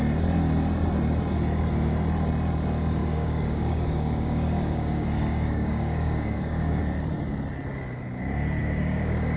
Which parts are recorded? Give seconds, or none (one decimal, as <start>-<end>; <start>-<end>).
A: 0.0-3.0; 6.8-8.6

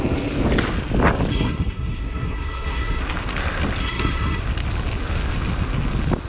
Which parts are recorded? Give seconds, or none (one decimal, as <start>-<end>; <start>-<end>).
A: 0.0-1.3; 3.0-3.8; 4.4-6.3

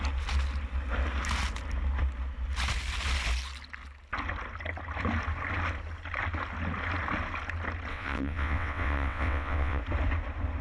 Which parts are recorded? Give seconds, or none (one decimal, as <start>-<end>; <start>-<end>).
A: 0.0-7.9; 9.8-10.6

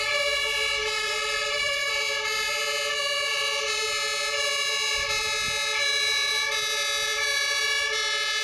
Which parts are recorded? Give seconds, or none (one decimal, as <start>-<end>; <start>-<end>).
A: 0.0-0.8; 2.0-8.4

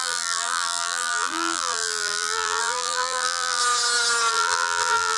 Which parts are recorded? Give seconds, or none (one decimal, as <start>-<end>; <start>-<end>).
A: 3.6-4.3

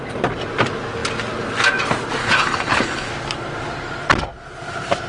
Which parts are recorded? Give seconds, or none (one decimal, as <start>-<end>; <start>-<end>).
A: 0.0-2.2; 3.1-5.1